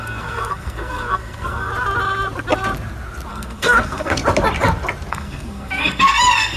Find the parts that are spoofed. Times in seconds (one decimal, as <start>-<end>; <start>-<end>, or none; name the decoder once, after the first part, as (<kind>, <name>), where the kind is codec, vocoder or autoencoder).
0.0-1.7 (codec, SNAC); 3.3-4.2; 5.1-6.6